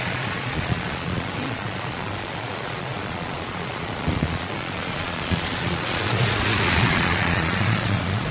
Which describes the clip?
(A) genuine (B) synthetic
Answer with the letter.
B